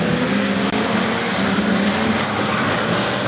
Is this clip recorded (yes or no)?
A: yes